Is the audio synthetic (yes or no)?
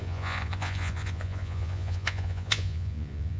yes